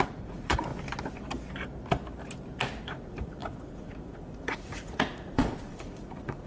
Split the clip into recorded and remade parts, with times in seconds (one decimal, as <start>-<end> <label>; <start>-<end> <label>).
0.0-0.7 remade; 0.7-2.8 recorded; 2.8-6.5 remade